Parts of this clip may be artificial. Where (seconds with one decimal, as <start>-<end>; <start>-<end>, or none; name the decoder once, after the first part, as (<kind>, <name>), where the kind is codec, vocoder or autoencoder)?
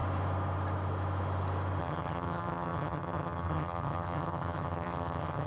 1.8-5.5 (vocoder, HiFi-GAN)